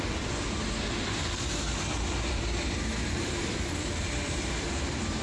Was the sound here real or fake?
fake